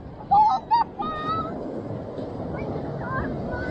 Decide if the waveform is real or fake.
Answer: real